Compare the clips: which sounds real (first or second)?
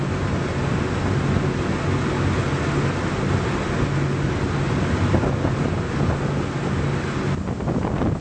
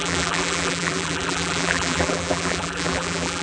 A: first